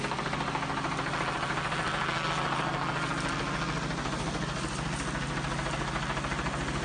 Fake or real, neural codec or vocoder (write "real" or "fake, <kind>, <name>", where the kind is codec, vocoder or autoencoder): real